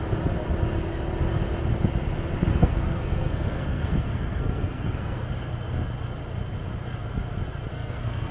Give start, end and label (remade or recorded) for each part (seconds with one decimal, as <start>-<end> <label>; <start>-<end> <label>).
0.0-2.5 recorded; 2.5-5.3 remade; 5.3-7.7 recorded; 7.7-8.3 remade